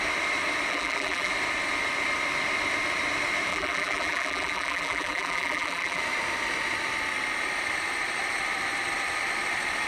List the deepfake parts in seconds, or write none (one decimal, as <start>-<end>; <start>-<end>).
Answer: 0.7-1.3; 3.5-6.0